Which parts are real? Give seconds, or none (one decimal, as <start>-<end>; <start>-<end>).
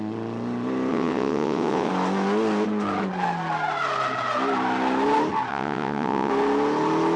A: 0.0-0.9; 1.9-5.5; 6.3-7.2